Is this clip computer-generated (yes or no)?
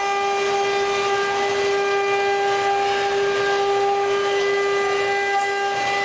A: no